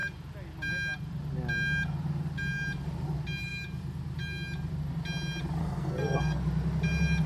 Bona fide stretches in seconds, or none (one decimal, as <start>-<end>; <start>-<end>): 0.0-5.6; 6.4-7.3